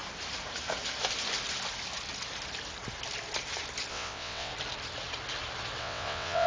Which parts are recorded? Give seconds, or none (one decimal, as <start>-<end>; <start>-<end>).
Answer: 0.0-3.9; 4.5-5.8